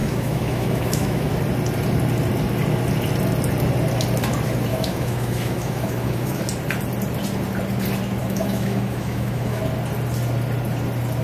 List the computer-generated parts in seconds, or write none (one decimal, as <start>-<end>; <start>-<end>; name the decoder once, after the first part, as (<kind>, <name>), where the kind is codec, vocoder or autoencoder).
0.0-1.3 (autoencoder, DAC-VAE); 4.7-6.4; 8.2-9.6